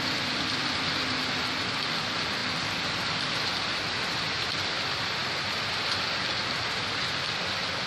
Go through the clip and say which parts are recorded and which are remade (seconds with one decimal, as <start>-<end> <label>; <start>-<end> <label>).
0.0-7.9 recorded